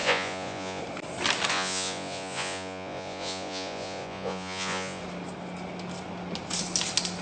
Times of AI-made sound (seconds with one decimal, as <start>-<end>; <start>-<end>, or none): 0.0-0.8; 1.5-5.0